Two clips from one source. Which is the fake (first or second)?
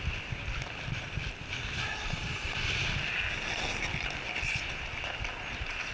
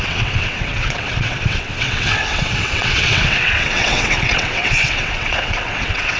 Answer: second